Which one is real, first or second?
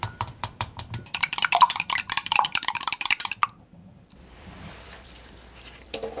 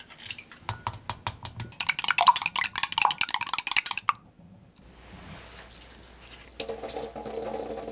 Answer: second